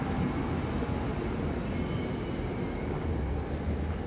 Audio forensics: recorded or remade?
recorded